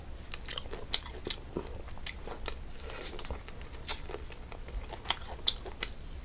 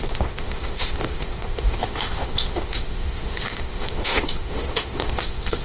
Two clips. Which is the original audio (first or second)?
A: first